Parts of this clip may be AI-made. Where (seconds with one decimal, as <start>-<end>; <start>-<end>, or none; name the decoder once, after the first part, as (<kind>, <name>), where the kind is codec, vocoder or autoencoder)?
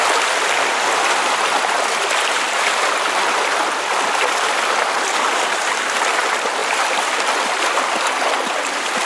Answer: 0.0-9.1 (vocoder, BigVGAN v2)